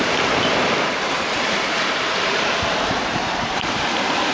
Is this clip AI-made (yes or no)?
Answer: yes